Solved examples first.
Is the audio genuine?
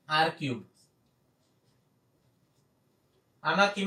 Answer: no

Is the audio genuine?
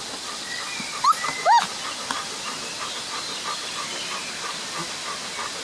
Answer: yes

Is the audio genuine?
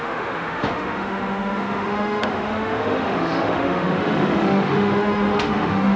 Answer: no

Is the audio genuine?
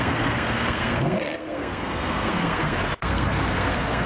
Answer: no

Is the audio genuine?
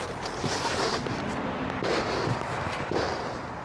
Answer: yes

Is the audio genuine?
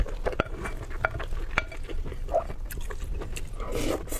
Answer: yes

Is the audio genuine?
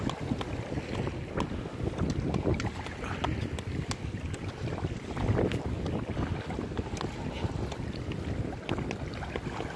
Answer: yes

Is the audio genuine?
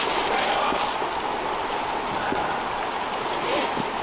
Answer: yes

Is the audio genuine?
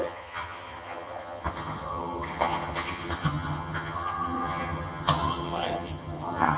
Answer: no